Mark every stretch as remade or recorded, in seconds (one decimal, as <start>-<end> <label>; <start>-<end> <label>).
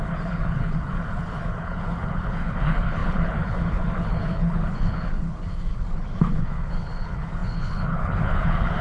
0.0-8.8 remade